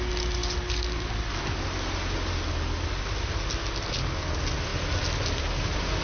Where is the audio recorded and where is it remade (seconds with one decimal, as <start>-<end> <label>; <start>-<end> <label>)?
0.0-6.0 recorded